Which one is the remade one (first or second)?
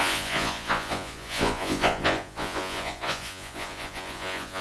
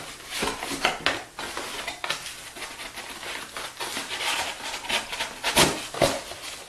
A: first